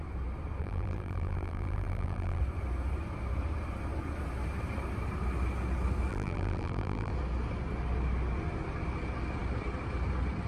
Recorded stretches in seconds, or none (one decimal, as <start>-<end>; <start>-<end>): 0.0-0.6; 2.4-6.1; 7.1-10.5